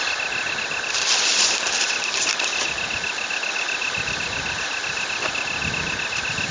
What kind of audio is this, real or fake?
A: real